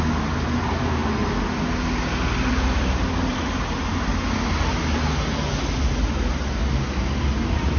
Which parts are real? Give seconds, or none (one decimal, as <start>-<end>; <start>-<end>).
0.0-3.3; 4.2-7.8